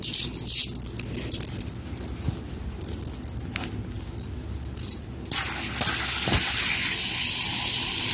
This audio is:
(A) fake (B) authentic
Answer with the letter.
B